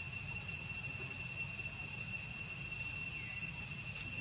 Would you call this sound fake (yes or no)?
no